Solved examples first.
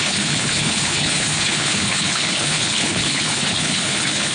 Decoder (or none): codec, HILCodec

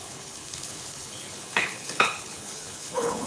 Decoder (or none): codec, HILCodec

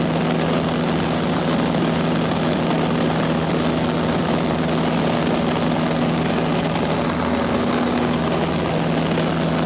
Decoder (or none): none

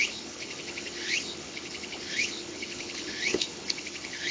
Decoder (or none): codec, HILCodec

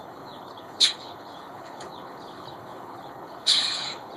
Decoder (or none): codec, HILCodec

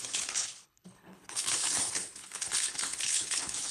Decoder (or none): codec, HILCodec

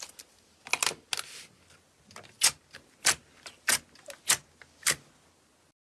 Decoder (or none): none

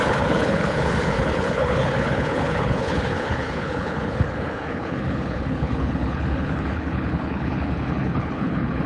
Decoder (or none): codec, HILCodec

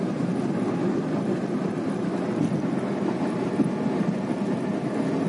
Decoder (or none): none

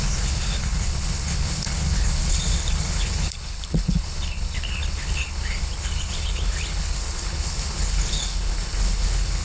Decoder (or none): codec, HILCodec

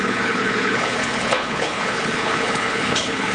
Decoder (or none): codec, HILCodec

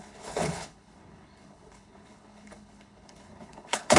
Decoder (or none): codec, HILCodec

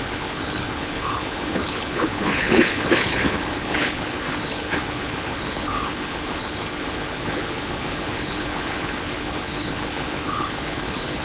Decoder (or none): codec, HILCodec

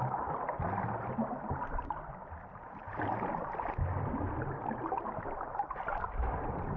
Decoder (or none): none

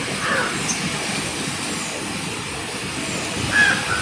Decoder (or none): none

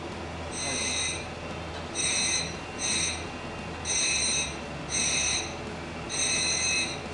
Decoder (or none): none